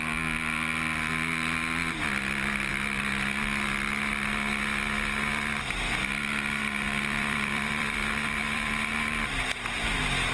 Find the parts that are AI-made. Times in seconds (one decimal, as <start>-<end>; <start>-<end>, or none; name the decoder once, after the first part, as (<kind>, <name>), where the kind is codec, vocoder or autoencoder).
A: 6.6-8.9 (vocoder, BigVGAN v2)

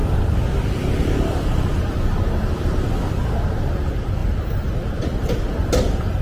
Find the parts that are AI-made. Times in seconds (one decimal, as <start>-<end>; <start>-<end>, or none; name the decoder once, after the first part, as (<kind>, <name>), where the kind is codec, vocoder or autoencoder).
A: none